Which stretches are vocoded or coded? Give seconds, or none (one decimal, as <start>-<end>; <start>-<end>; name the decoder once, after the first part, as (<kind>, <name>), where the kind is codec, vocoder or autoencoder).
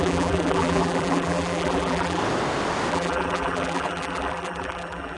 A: 0.0-2.2 (vocoder, BigVGAN v2); 2.9-5.2